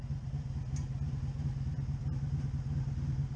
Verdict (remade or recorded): recorded